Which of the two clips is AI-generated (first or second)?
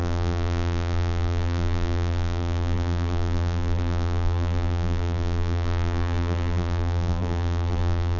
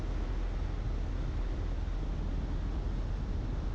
first